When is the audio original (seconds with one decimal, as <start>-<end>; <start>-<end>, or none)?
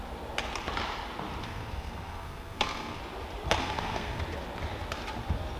0.0-1.4; 3.0-3.6; 4.2-5.6